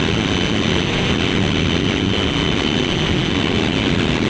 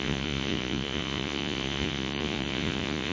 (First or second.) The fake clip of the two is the second